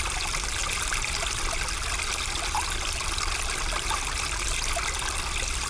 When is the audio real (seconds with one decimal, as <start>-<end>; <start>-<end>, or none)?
0.0-5.7